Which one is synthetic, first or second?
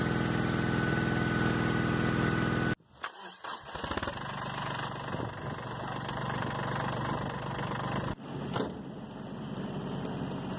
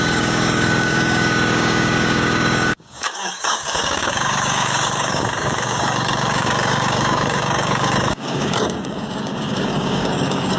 second